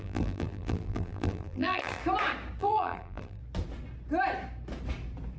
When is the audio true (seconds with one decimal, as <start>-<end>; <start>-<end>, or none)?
2.0-2.6; 3.4-5.4